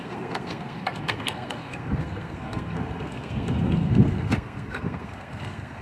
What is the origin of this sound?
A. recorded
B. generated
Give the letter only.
B